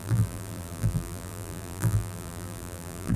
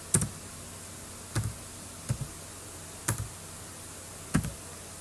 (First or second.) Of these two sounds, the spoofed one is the first